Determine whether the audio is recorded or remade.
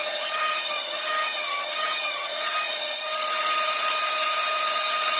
remade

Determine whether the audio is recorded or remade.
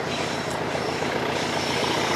recorded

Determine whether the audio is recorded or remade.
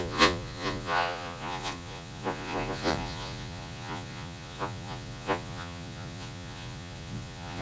remade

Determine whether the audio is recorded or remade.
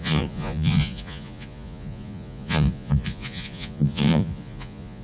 remade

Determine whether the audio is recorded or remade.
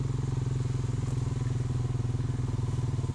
recorded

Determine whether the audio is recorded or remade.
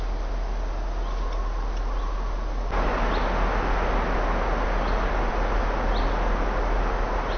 recorded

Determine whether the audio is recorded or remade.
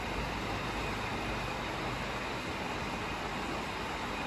recorded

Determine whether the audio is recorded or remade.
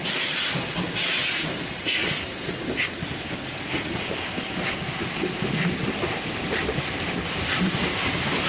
recorded